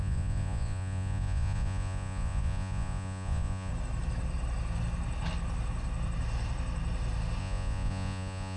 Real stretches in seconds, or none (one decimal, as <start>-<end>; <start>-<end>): 3.7-7.4